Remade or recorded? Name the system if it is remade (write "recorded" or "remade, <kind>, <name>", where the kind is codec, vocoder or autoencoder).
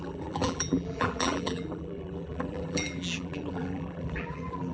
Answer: remade, vocoder, BigVGAN v2